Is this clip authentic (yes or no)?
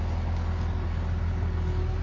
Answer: yes